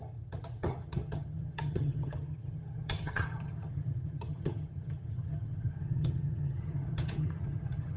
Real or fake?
fake